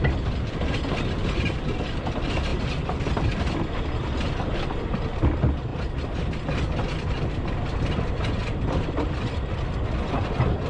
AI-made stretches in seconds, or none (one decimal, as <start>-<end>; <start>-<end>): none